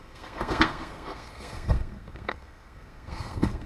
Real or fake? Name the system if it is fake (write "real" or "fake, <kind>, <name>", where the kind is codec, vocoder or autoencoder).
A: fake, codec, SNAC